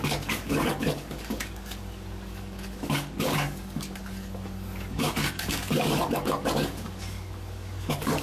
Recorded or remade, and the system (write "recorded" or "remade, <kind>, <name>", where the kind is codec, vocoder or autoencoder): remade, codec, DAC